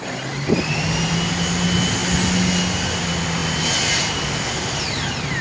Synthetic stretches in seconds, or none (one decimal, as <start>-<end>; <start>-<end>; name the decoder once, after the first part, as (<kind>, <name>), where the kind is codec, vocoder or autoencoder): 3.4-4.4 (vocoder, BigVGAN v2)